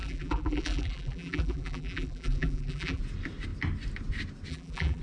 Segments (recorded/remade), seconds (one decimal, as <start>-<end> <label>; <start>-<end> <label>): 0.0-3.0 remade; 3.0-4.5 recorded; 4.5-5.0 remade